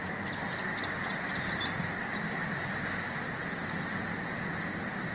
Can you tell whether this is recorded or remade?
recorded